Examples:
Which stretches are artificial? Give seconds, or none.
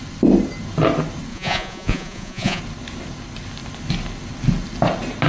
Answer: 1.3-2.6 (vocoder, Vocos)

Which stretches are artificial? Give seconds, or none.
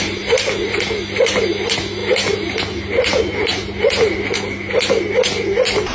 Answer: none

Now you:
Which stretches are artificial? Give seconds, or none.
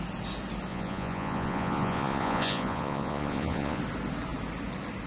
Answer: 0.7-3.8 (vocoder, Vocos)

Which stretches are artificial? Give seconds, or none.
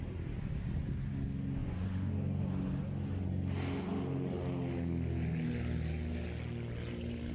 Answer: 1.6-2.1 (vocoder, Vocos)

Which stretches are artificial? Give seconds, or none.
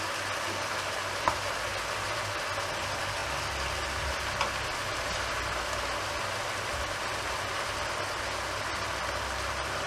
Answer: none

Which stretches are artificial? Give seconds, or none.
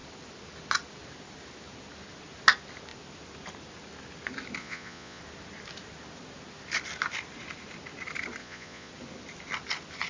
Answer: 4.6-5.2 (vocoder, Vocos); 8.4-8.9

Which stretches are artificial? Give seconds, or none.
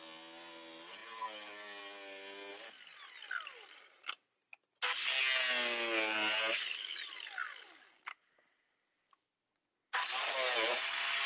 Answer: none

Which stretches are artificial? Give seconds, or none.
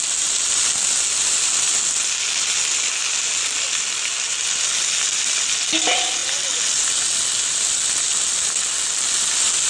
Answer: none